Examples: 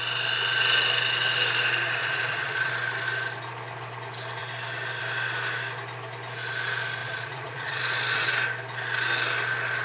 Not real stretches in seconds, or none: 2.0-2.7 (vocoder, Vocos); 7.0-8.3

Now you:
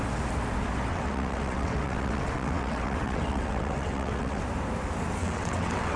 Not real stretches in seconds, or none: 0.9-4.4 (vocoder, WaveNeXt); 5.2-6.0

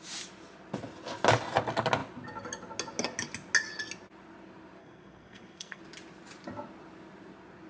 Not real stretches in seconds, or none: 4.8-5.8 (codec, SNAC)